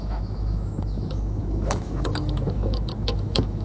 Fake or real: fake